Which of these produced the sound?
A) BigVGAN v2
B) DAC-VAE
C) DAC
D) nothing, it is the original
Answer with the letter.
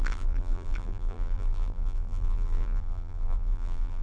A